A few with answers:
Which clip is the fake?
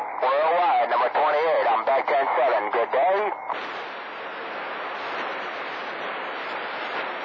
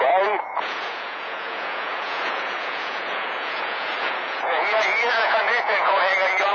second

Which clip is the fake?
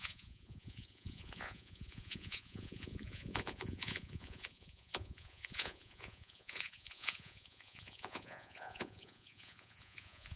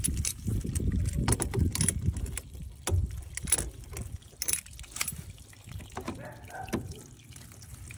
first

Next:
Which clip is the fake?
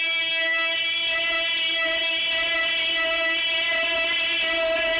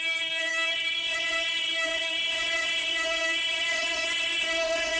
second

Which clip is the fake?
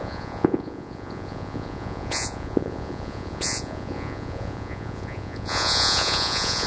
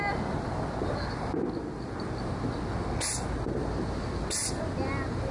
first